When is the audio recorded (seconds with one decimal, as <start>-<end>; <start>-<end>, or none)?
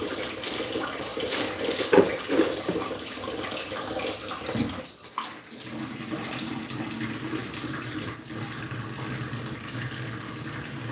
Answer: 0.0-7.4; 8.1-10.9